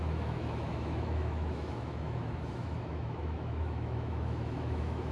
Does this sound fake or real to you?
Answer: fake